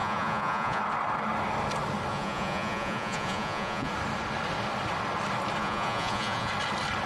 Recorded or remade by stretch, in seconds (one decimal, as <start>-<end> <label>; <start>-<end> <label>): 0.0-0.8 remade; 0.8-2.1 recorded; 2.1-3.9 remade; 3.9-5.6 recorded; 5.6-6.5 remade; 6.5-7.1 recorded

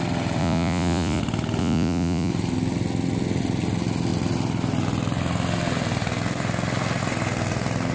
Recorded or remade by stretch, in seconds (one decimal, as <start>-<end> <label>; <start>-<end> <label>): 0.0-0.4 recorded; 0.4-1.2 remade; 1.2-1.6 recorded; 1.6-2.3 remade; 2.3-7.9 recorded

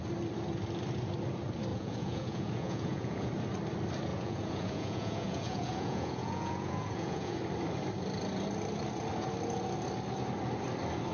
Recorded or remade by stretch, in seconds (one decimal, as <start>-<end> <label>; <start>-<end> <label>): 0.0-1.7 recorded; 1.7-3.3 remade; 3.3-4.1 recorded; 4.1-7.4 remade; 7.4-11.1 recorded

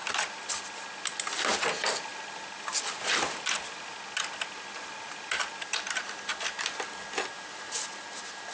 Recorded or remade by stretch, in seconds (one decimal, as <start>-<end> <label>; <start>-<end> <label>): 0.0-8.5 recorded

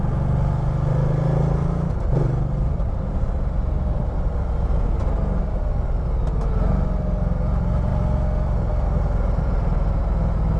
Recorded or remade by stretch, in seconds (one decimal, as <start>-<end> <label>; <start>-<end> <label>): 0.0-10.6 recorded

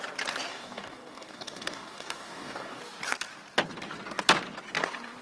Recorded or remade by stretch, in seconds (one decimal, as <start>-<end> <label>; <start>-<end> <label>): 0.0-0.5 recorded; 0.5-2.8 remade; 2.8-5.2 recorded

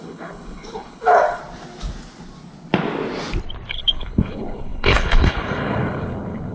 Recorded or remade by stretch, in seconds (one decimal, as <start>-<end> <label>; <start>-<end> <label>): 0.0-1.4 remade; 1.4-3.7 recorded; 3.7-6.5 remade

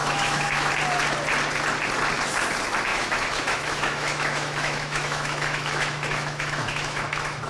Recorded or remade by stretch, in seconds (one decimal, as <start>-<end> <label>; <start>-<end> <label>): 0.0-0.7 remade; 0.7-2.9 recorded; 2.9-7.5 remade